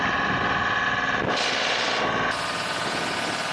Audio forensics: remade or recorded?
recorded